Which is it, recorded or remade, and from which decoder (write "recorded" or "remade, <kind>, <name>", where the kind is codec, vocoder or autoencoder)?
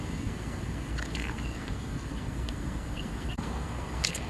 remade, codec, SNAC